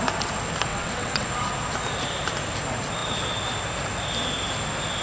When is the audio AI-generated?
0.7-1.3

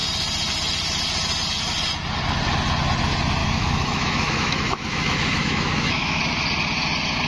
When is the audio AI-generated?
3.4-6.2

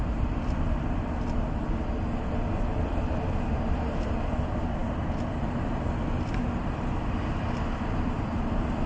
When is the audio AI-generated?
0.0-1.0; 2.0-8.9

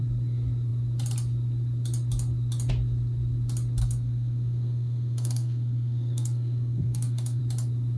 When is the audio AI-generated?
3.8-7.4

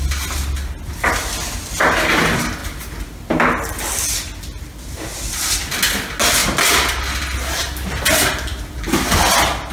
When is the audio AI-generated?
none

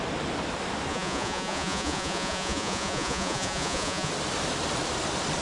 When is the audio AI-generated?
0.9-4.1

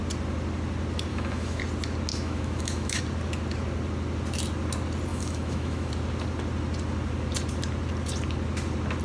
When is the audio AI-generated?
1.1-1.6; 2.1-3.0; 5.1-5.9

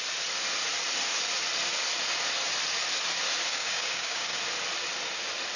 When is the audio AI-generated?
3.5-4.4